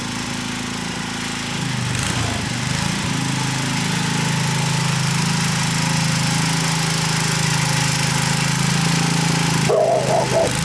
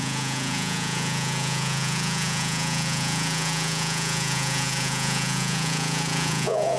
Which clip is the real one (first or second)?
first